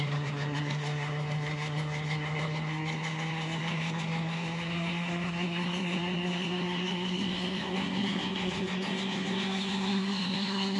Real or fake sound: fake